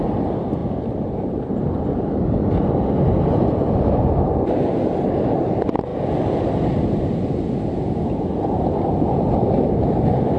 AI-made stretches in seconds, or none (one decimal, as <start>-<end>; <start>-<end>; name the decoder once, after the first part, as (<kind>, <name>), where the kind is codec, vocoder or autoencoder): none